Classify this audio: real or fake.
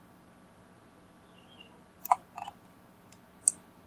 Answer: real